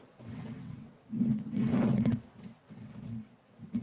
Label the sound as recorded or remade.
remade